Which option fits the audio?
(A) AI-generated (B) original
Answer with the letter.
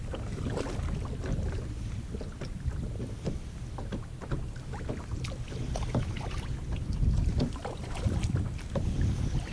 B